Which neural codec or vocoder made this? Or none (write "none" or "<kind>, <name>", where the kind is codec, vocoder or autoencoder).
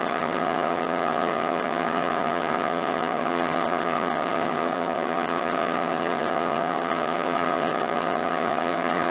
vocoder, HiFi-GAN